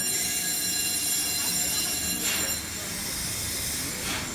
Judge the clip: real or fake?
real